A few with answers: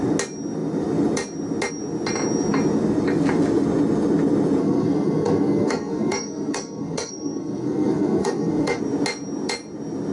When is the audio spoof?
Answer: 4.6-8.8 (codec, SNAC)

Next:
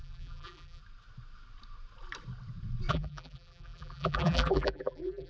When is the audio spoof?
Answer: 0.0-0.8 (vocoder, BigVGAN v2); 2.9-5.3

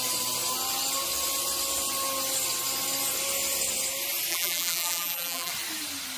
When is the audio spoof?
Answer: 4.3-5.5 (vocoder, BigVGAN v2)

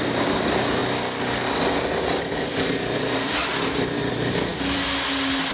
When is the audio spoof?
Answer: none

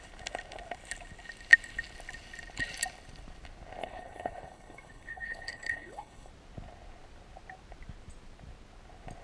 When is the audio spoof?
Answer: 3.8-6.3 (codec, HILCodec)

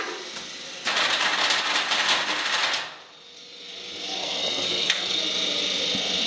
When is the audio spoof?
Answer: 4.2-5.2 (codec, SNAC)

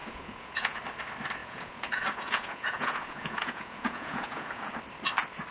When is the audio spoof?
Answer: 0.0-0.8 (vocoder, Vocos); 1.4-4.7

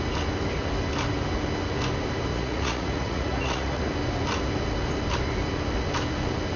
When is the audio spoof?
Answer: 2.3-3.9 (vocoder, Vocos)